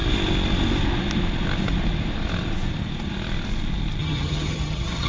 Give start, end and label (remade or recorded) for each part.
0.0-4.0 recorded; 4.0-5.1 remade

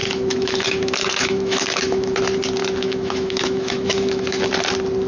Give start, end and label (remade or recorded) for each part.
0.0-2.2 remade; 2.2-2.6 recorded; 2.6-4.5 remade; 4.5-5.1 recorded

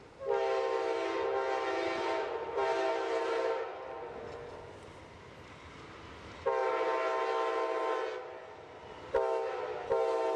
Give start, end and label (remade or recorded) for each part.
0.0-10.4 recorded